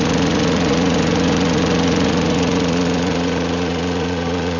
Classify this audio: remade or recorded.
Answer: remade